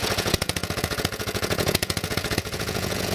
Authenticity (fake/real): fake